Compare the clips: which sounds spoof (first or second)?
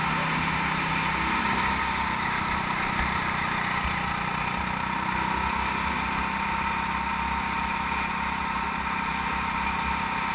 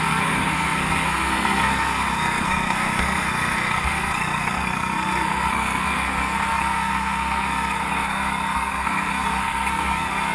second